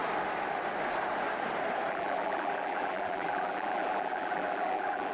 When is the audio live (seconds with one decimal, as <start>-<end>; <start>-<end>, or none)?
0.0-1.9